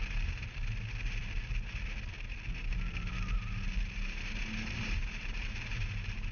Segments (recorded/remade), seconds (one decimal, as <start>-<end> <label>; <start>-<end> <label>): 0.0-0.6 remade; 0.6-3.9 recorded; 3.9-6.3 remade

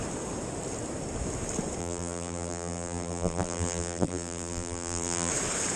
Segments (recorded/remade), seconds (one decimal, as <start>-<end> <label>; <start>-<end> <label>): 0.0-1.8 recorded; 1.8-5.3 remade; 5.3-5.8 recorded

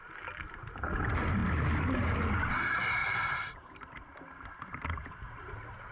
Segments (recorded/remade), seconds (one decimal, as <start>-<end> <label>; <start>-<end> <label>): 0.0-3.0 recorded; 3.0-4.2 remade; 4.2-5.9 recorded

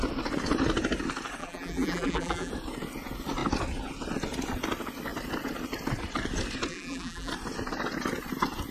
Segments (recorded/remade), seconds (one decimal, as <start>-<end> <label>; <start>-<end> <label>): 0.0-1.4 recorded; 1.4-2.5 remade; 2.5-6.7 recorded; 6.7-7.3 remade; 7.3-8.7 recorded

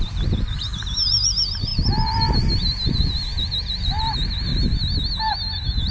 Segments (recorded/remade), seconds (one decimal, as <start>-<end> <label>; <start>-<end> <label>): 0.0-4.5 remade; 4.5-5.3 recorded; 5.3-5.9 remade